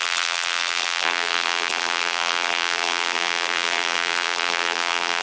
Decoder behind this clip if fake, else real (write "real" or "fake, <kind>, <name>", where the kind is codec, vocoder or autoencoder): fake, vocoder, BigVGAN v2